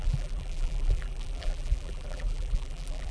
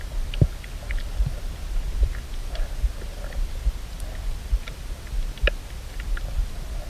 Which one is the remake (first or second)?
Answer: first